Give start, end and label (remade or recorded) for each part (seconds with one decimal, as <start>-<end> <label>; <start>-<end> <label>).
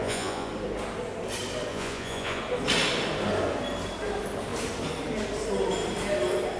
0.0-0.5 remade; 0.5-1.7 recorded; 1.7-2.4 remade; 2.4-6.6 recorded